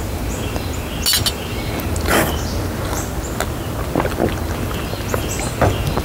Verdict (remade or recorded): recorded